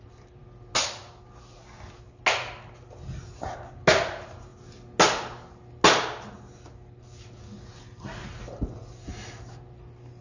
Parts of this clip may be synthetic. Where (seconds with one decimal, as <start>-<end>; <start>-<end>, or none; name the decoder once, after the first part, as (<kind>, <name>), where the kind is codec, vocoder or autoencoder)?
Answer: none